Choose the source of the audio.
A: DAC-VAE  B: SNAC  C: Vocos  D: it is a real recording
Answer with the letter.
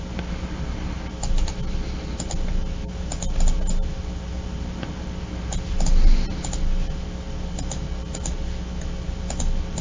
D